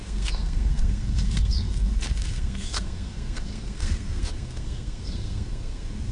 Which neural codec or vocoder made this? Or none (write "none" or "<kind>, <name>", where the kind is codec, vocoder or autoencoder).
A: codec, SNAC